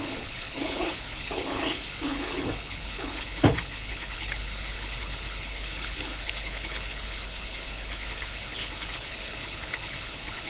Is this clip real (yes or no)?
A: no